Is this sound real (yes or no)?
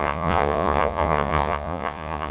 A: no